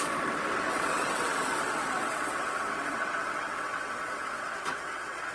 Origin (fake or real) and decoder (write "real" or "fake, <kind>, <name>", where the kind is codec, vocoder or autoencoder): fake, vocoder, WaveNeXt